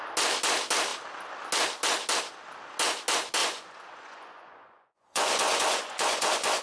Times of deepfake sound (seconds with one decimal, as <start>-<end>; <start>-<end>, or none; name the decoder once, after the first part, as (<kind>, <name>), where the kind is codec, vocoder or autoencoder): 3.4-6.6 (vocoder, Vocos)